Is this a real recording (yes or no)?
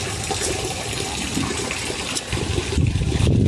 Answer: no